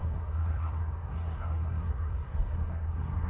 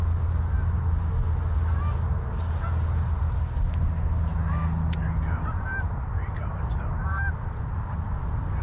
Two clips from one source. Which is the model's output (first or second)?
first